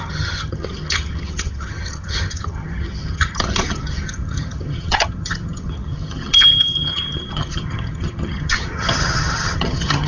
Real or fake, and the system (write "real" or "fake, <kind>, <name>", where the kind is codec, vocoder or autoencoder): fake, vocoder, HiFi-GAN